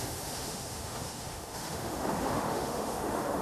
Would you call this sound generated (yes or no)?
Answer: yes